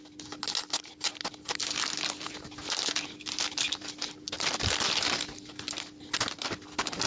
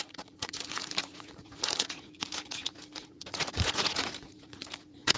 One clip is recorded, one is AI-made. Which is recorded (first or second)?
first